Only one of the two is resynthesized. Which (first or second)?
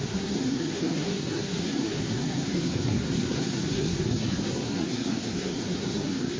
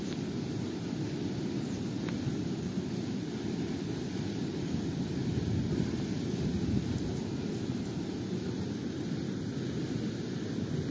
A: first